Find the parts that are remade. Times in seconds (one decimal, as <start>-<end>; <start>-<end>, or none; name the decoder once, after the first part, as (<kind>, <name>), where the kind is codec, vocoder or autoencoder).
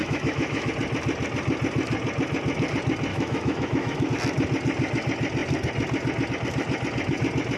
0.0-0.7 (autoencoder, DAC-VAE); 3.1-4.1